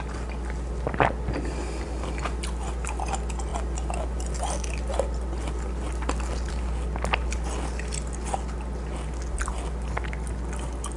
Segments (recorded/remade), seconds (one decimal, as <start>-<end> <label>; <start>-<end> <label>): 0.0-11.0 recorded